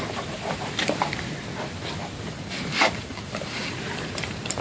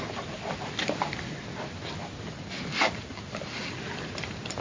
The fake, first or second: first